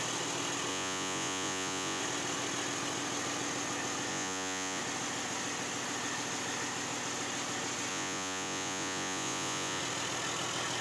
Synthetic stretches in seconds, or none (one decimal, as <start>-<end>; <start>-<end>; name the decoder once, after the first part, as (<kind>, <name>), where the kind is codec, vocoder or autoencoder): 0.7-2.0 (vocoder, Vocos); 4.1-4.8; 7.9-9.8